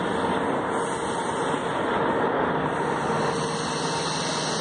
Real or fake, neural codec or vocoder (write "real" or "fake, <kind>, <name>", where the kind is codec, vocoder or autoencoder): real